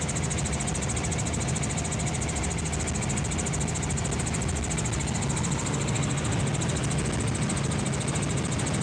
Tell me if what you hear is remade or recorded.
recorded